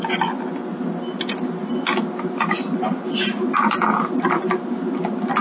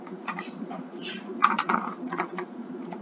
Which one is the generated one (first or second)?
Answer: second